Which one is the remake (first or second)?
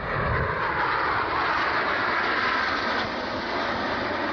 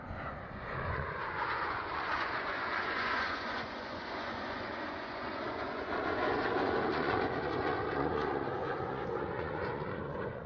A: second